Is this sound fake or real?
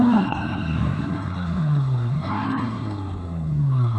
fake